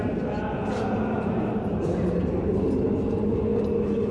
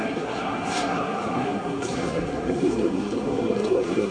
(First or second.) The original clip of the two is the first